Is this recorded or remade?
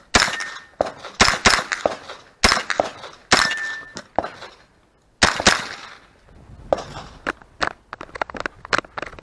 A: recorded